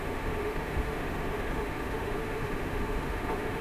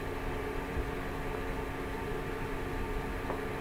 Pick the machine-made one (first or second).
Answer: first